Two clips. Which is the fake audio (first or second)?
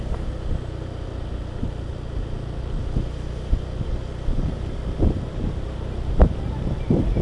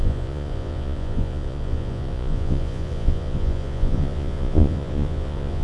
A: second